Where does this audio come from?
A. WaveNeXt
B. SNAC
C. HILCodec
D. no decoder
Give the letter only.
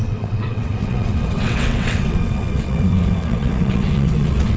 A